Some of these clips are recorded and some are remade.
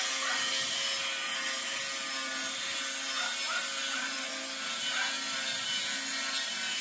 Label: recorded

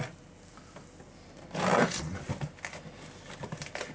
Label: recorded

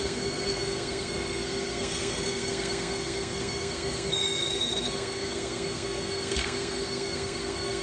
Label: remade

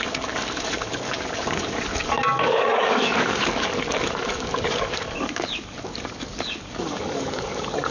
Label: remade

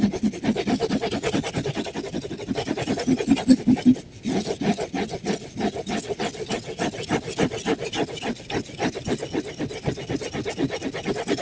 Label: recorded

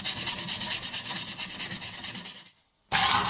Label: recorded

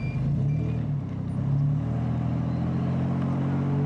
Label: recorded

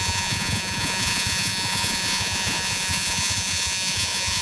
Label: remade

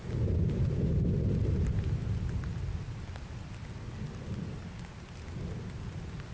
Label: recorded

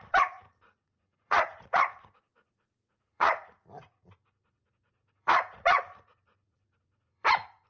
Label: remade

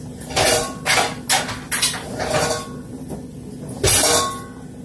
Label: recorded